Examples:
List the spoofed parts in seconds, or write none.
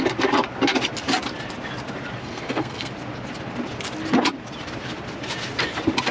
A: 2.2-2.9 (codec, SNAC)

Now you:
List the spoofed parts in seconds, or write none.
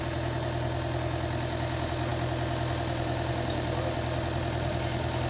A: none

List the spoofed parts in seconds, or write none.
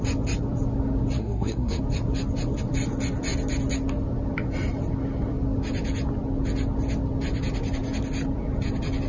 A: 1.2-1.8 (codec, SNAC)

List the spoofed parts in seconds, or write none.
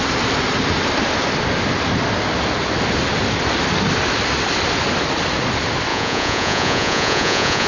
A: 5.9-7.7 (vocoder, Vocos)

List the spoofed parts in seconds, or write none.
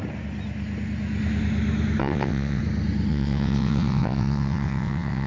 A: 2.0-2.6 (vocoder, WaveNeXt); 3.1-5.3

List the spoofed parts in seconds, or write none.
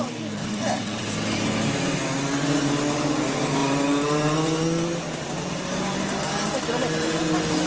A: 0.4-1.1 (vocoder, WaveNeXt)